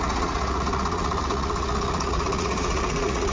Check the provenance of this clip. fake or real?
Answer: fake